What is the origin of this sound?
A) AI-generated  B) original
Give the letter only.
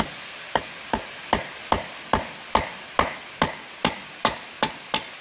B